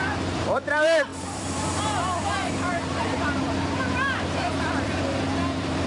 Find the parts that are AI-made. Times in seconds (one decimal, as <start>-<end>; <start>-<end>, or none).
0.0-5.9